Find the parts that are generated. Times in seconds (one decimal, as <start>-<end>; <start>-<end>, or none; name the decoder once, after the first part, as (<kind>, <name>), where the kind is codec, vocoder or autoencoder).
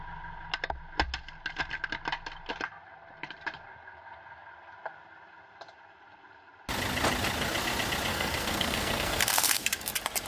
8.1-9.9 (codec, SNAC)